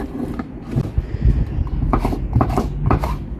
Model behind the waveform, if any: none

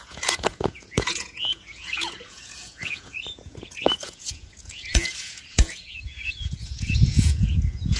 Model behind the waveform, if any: vocoder, Vocos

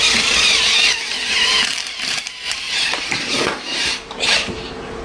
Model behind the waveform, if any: vocoder, BigVGAN v2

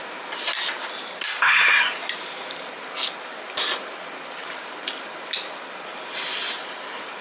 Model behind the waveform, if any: none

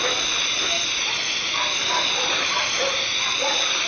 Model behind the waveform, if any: none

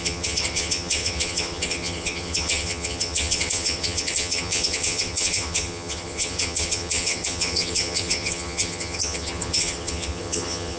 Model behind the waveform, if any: vocoder, HiFi-GAN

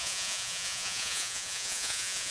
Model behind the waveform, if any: vocoder, Vocos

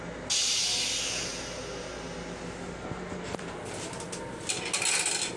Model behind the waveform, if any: none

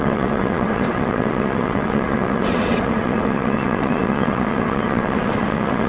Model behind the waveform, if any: vocoder, WaveNeXt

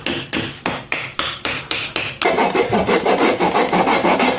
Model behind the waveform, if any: none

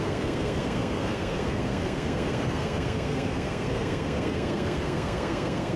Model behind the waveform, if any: codec, SNAC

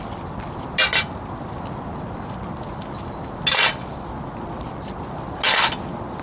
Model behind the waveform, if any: none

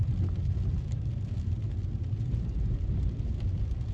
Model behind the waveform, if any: none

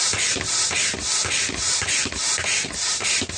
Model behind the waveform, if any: none